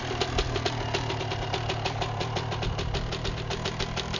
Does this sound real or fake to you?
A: real